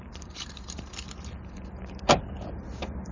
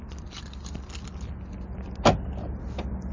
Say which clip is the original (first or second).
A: second